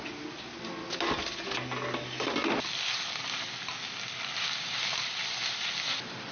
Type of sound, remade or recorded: recorded